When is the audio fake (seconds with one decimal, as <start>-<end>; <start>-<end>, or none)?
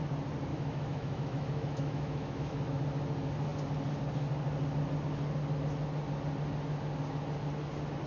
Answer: 0.5-2.8